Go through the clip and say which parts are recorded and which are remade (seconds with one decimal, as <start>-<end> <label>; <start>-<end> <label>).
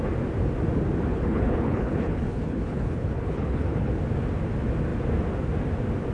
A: 0.0-1.1 recorded; 1.1-3.9 remade; 3.9-6.1 recorded